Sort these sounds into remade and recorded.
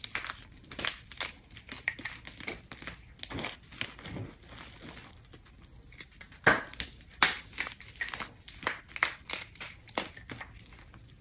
recorded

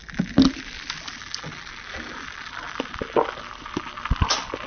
recorded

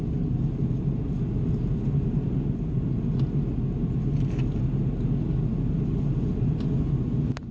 recorded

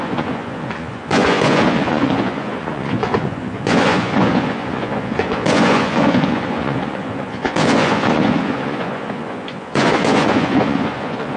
remade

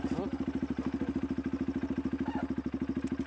recorded